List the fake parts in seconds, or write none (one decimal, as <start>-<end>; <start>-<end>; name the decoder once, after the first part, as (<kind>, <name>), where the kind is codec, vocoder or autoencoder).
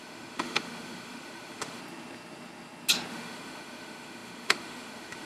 0.0-1.8 (autoencoder, DAC-VAE); 3.1-5.3